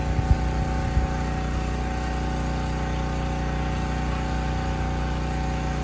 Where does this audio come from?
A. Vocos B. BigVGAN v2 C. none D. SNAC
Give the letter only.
C